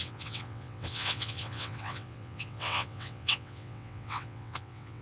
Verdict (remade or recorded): remade